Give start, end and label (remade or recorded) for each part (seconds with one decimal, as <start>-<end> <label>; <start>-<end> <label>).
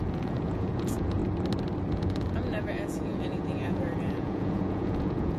0.0-1.2 remade; 1.2-1.9 recorded; 1.9-5.4 remade